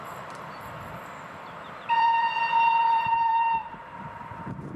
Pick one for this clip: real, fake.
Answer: fake